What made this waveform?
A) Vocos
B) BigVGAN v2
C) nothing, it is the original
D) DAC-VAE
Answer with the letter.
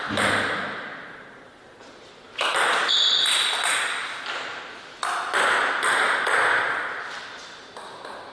C